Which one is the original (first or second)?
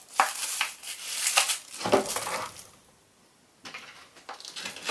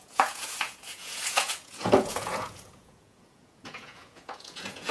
first